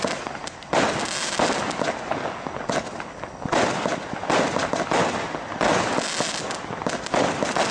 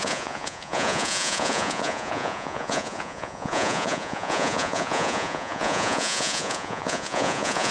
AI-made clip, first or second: second